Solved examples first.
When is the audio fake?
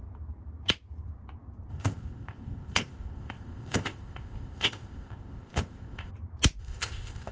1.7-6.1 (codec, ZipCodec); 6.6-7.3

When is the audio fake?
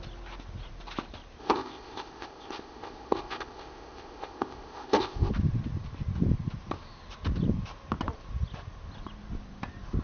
1.4-5.3 (codec, ZipCodec)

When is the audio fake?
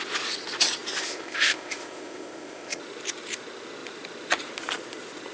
1.0-2.8 (codec, ZipCodec)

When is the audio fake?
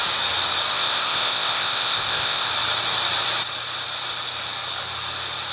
0.7-2.5 (codec, ZipCodec)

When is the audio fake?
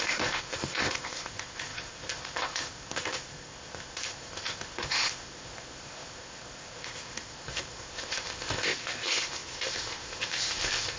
0.0-11.0 (codec, ZipCodec)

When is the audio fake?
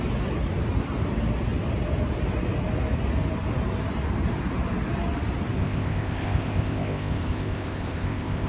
5.6-8.5 (codec, ZipCodec)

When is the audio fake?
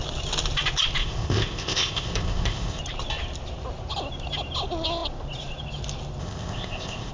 1.0-2.8 (codec, ZipCodec); 6.2-7.1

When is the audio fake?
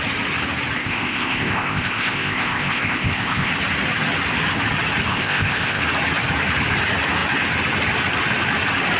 0.8-3.5 (codec, ZipCodec); 5.1-5.8